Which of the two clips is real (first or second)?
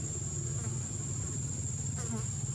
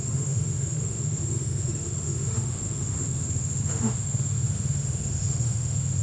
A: first